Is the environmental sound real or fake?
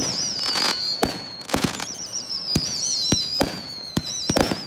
fake